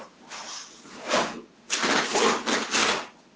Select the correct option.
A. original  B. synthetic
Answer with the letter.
A